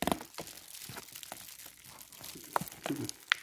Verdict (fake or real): real